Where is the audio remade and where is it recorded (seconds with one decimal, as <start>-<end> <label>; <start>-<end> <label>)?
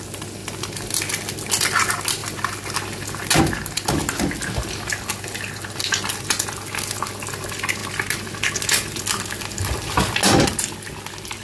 0.0-11.4 recorded